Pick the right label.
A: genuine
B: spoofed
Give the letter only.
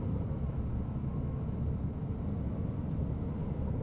A